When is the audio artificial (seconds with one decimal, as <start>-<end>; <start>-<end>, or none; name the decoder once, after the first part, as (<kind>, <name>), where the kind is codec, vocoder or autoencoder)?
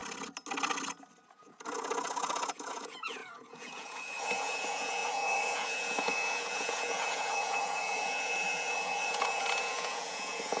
1.3-10.6 (vocoder, Vocos)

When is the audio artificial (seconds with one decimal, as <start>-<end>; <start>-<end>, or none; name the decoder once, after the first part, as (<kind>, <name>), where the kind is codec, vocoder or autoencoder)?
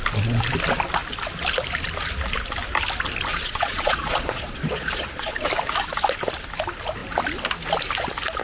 3.3-5.5 (vocoder, Vocos)